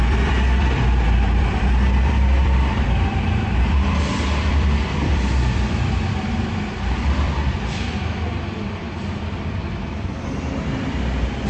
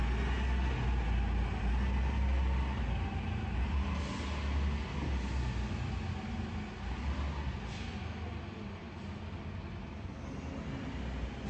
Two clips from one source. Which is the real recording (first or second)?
second